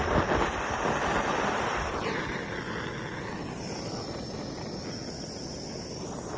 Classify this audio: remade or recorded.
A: recorded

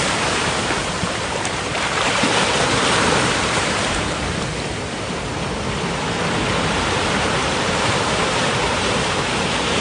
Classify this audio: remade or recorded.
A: remade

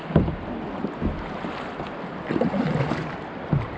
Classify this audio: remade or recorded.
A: recorded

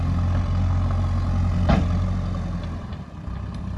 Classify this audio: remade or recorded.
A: recorded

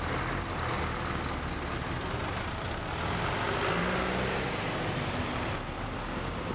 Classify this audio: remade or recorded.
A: recorded